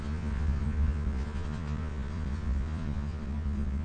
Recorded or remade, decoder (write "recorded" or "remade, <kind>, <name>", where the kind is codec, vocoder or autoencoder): remade, vocoder, Vocos